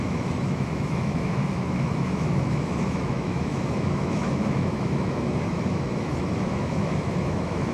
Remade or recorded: remade